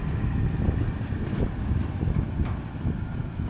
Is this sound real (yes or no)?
yes